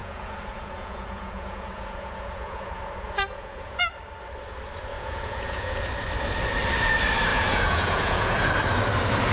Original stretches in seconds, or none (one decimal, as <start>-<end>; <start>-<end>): 3.8-4.9; 5.8-7.3; 8.5-9.3